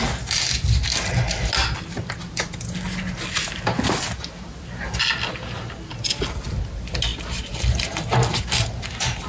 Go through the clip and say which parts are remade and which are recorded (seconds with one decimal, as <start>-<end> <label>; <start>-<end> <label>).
0.0-9.3 recorded